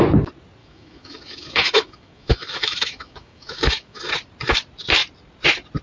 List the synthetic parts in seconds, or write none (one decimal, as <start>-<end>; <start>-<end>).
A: 0.6-4.1